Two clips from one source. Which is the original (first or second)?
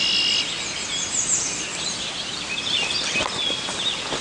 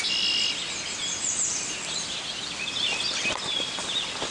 first